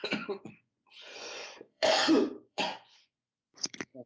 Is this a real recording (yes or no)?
no